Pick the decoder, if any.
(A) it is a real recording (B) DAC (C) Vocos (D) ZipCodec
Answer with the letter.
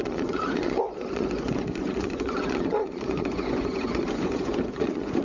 C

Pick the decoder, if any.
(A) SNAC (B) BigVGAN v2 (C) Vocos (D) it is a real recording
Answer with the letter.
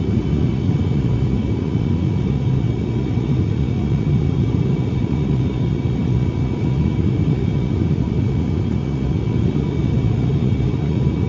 C